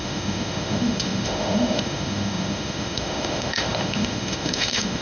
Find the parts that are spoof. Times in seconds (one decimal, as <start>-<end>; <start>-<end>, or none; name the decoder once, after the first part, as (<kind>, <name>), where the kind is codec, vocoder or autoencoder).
0.0-5.0 (autoencoder, DAC-VAE)